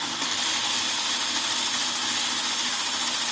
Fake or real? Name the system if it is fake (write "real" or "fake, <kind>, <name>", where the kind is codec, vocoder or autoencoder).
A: real